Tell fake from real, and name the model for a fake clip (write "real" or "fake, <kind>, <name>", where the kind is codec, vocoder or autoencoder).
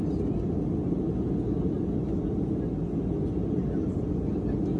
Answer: real